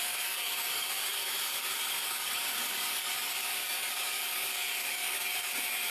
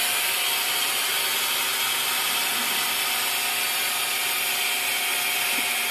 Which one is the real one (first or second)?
second